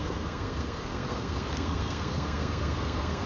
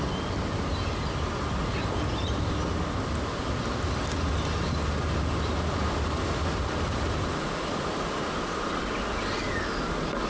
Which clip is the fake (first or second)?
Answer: first